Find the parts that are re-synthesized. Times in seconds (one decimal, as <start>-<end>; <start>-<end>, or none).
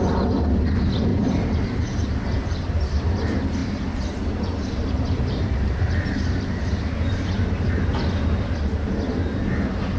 1.1-3.0; 3.6-7.7